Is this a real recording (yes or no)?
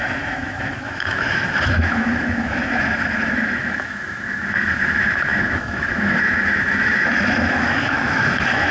no